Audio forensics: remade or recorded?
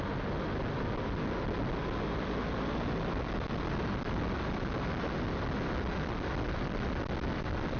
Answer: recorded